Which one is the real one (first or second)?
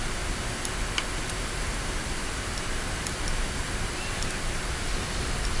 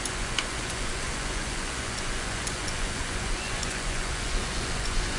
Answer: first